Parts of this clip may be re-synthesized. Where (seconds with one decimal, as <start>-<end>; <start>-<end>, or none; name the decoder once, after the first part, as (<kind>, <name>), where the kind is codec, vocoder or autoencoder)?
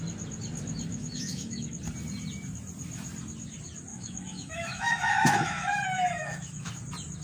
0.9-1.7 (autoencoder, DAC-VAE); 3.9-6.7